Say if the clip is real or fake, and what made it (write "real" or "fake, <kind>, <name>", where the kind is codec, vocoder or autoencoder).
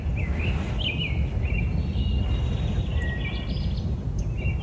real